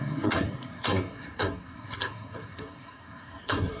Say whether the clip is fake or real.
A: fake